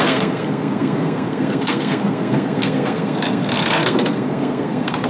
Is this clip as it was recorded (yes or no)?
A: no